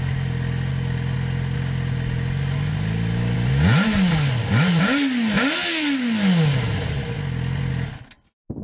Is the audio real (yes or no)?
yes